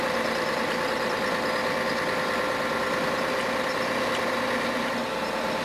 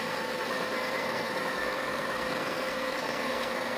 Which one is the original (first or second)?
first